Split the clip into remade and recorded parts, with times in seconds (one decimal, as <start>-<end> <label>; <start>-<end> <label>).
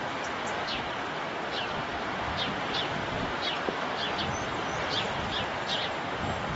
0.0-1.9 recorded; 1.9-2.4 remade; 2.4-3.0 recorded; 3.0-4.2 remade; 4.2-6.6 recorded